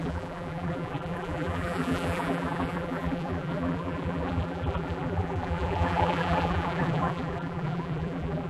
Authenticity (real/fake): fake